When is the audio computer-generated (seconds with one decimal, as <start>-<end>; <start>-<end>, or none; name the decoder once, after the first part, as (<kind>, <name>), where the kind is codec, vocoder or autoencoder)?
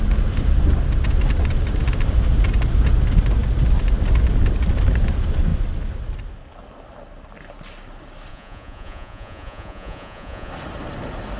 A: 8.3-10.5 (vocoder, Vocos)